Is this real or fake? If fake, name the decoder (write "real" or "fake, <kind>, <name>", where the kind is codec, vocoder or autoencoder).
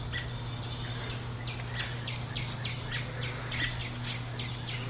real